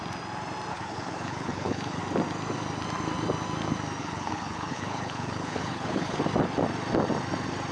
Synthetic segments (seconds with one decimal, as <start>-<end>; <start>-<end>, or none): 0.7-2.0; 4.0-6.2